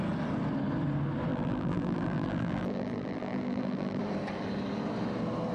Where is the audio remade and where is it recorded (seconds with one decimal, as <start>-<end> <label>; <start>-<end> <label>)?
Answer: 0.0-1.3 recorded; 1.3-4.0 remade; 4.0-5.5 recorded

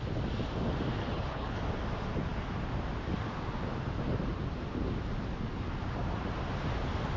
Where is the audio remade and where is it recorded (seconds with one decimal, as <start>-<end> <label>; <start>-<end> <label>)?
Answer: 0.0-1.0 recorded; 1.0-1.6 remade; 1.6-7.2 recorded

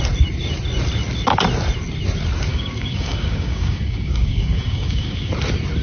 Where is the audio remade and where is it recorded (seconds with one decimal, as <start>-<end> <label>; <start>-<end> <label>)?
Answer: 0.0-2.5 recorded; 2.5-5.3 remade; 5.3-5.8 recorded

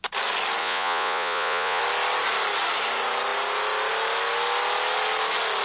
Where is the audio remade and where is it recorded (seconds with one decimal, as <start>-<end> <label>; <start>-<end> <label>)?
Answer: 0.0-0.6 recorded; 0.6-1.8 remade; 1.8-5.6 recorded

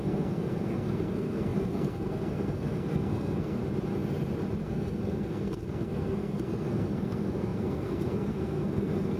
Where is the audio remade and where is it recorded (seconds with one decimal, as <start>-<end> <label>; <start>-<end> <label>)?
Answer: 0.0-3.6 remade; 3.6-4.6 recorded; 4.6-9.2 remade

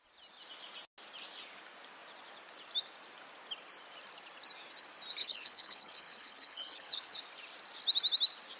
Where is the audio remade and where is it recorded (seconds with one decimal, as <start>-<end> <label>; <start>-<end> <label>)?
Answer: 0.0-5.2 recorded; 5.2-7.2 remade; 7.2-8.6 recorded

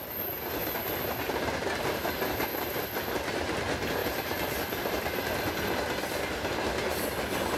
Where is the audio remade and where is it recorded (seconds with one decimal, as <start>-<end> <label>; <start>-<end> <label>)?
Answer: 0.0-0.6 recorded; 0.6-2.8 remade; 2.8-4.0 recorded; 4.0-5.5 remade; 5.5-7.6 recorded

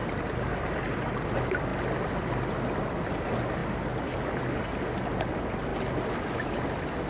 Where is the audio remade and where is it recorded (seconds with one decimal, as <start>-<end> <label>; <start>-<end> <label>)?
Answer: 0.0-0.7 remade; 0.7-7.1 recorded